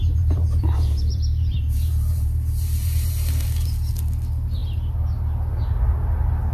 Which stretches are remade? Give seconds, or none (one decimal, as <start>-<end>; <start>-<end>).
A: 0.0-3.9